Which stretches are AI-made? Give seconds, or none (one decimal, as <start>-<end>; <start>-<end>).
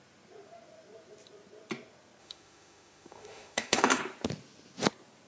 2.2-4.0